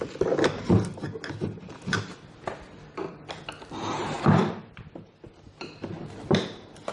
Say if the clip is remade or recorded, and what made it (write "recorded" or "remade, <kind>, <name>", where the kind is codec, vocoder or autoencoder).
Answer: recorded